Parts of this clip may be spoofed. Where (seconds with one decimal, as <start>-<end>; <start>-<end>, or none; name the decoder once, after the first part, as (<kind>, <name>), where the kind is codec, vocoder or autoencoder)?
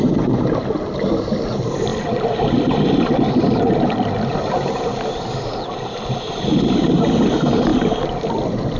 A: none